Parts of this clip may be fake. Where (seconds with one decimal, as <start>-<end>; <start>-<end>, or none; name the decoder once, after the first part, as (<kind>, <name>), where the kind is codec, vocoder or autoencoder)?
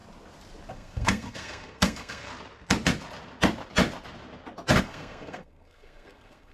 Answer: 0.7-2.3 (codec, SNAC); 4.8-6.5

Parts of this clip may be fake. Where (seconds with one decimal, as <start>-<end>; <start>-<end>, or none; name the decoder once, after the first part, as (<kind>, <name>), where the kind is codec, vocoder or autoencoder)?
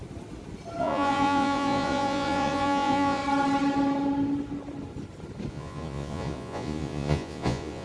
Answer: 0.8-3.2 (vocoder, Vocos); 5.5-7.8